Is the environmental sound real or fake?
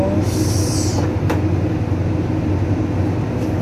real